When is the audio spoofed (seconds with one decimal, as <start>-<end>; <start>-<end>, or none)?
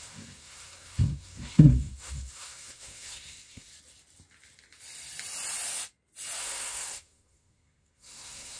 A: 0.0-3.7; 6.4-8.6